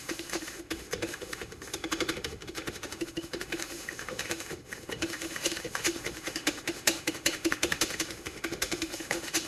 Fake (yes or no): yes